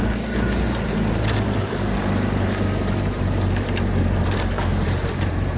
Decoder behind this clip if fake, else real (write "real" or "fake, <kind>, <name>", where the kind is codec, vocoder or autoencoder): fake, vocoder, BigVGAN v2